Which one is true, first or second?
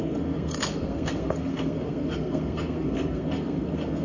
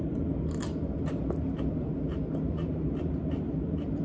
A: second